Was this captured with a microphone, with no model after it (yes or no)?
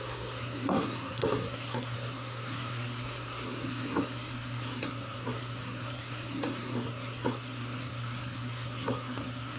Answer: no